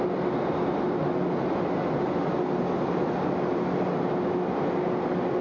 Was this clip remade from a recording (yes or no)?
no